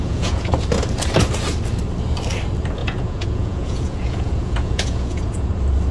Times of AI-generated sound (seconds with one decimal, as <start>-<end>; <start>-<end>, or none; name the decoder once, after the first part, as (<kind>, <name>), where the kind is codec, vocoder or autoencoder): 0.0-0.5 (vocoder, Vocos); 2.8-5.5